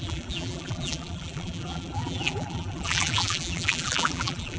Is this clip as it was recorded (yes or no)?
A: no